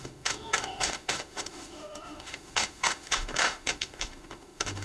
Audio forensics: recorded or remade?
remade